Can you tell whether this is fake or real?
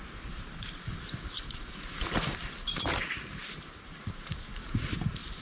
fake